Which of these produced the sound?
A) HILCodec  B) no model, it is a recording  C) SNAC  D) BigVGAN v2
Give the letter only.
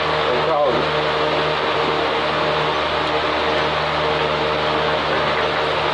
B